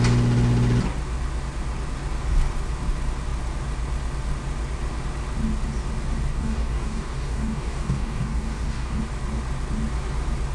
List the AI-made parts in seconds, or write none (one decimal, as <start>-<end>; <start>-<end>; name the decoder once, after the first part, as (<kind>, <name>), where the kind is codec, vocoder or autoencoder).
6.3-9.0 (codec, DAC)